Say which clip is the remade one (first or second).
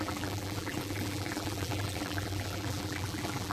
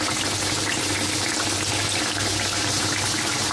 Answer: first